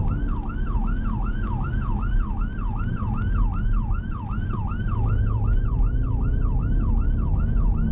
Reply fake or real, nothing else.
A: real